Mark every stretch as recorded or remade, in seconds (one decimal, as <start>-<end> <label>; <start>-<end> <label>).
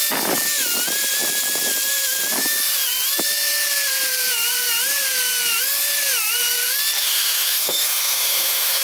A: 0.0-7.0 recorded; 7.0-8.8 remade